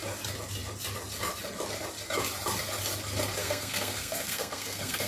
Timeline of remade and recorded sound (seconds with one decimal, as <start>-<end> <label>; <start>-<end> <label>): 0.0-3.4 recorded; 3.4-5.1 remade